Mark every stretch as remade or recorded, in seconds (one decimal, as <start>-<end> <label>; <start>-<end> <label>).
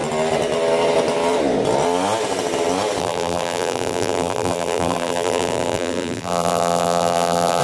0.0-3.0 recorded; 3.0-7.6 remade